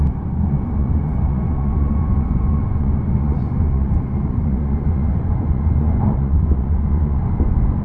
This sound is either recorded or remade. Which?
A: remade